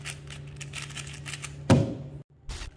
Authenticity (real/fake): real